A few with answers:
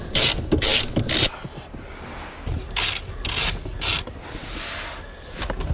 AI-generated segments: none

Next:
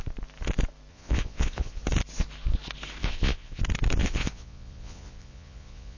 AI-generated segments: 0.9-1.8 (vocoder, Vocos); 3.0-3.6; 4.0-6.0

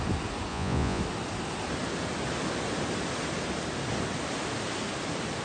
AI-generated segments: 0.5-1.0 (vocoder, Vocos)

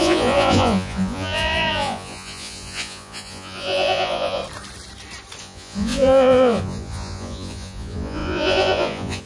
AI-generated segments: 0.0-4.4 (vocoder, Vocos); 5.4-9.2

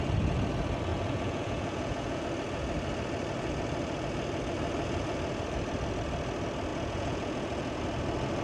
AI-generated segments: 0.9-2.2 (vocoder, Vocos); 6.7-7.8

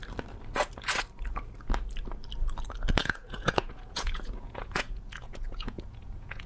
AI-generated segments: 3.0-6.5 (vocoder, Vocos)